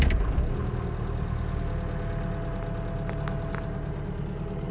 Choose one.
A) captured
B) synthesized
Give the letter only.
A